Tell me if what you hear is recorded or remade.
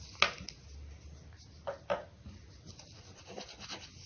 recorded